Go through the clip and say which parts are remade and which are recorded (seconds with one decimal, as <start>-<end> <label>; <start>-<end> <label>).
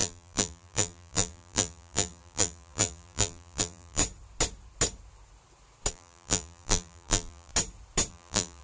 0.0-4.0 remade; 4.0-5.9 recorded; 5.9-7.5 remade; 7.5-8.1 recorded; 8.1-8.6 remade